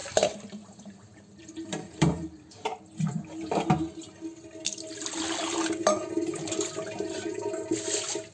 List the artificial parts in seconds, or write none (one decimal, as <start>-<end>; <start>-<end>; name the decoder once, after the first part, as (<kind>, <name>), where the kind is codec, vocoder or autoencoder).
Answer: 0.0-2.8 (vocoder, BigVGAN v2)